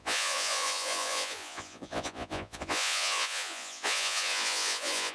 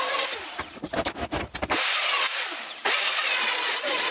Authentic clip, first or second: second